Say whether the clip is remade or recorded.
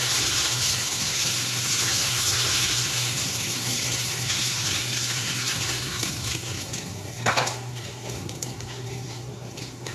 remade